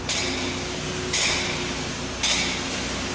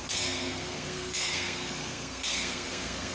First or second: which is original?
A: first